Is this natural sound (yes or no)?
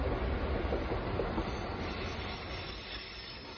yes